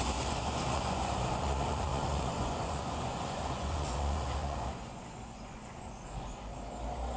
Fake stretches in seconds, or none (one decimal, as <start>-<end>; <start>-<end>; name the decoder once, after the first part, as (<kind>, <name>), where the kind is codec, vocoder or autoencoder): 0.0-6.5 (vocoder, Vocos)